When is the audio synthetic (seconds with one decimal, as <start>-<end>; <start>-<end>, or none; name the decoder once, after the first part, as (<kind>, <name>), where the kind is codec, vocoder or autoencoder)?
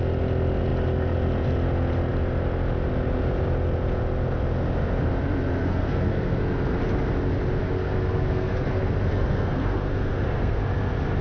5.6-6.4 (codec, SNAC); 7.6-10.6